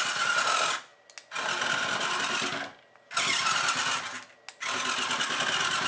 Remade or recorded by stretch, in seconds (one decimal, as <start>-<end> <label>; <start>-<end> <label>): 0.0-5.9 recorded